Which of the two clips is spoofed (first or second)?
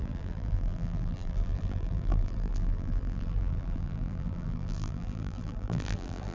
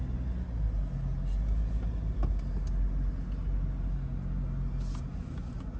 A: first